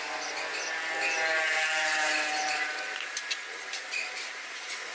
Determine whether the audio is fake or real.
real